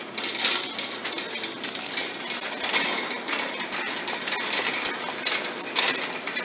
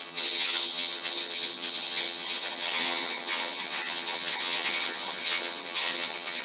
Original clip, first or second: first